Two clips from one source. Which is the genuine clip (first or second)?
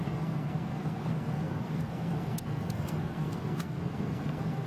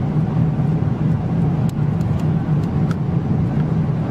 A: second